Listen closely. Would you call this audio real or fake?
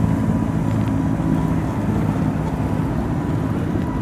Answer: real